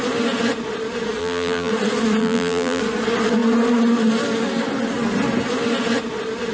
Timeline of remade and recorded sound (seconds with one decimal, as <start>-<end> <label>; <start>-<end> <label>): 0.0-1.2 recorded; 1.2-1.7 remade; 1.7-2.2 recorded; 2.2-2.8 remade; 2.8-6.5 recorded

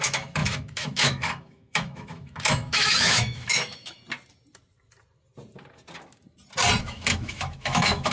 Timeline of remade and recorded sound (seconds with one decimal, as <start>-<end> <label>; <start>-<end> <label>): 0.0-4.0 remade; 4.0-6.8 recorded; 6.8-8.1 remade

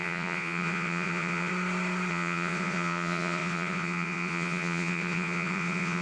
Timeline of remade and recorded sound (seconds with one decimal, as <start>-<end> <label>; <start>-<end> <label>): 0.0-1.5 remade; 1.5-2.1 recorded; 2.1-6.0 remade

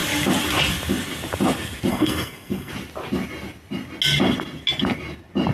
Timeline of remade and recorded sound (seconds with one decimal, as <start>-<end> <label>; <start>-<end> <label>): 0.0-1.9 recorded; 1.9-2.7 remade; 2.7-5.5 recorded

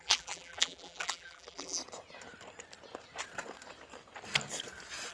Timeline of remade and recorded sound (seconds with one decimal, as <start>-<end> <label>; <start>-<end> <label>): 0.0-1.8 remade; 1.8-5.1 recorded